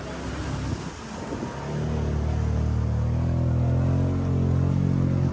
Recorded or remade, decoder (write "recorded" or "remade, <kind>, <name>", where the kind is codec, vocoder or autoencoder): recorded